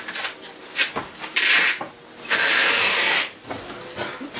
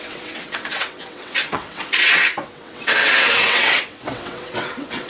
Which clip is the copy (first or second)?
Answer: second